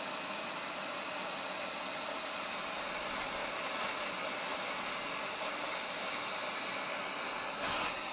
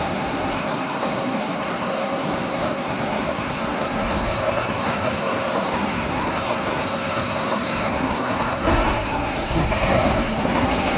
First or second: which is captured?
first